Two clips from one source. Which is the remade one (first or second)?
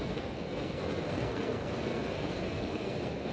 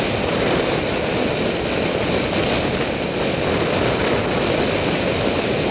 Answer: first